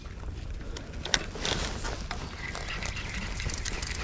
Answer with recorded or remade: recorded